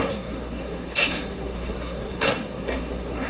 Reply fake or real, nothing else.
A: fake